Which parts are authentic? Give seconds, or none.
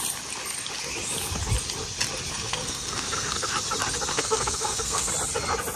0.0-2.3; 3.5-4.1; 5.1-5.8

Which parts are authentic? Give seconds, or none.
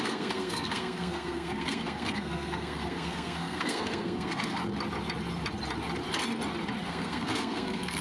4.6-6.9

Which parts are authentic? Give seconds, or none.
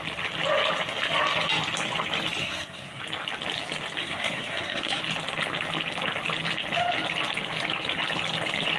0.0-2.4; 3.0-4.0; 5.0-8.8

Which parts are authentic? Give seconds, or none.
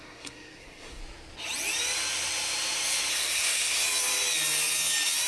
1.0-3.1; 3.8-5.3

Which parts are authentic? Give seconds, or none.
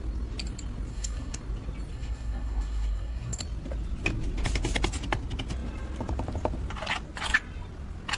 0.0-0.9; 1.4-1.9; 3.4-8.2